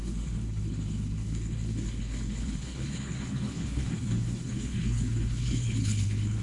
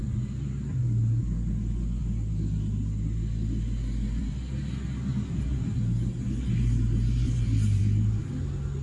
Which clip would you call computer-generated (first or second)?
first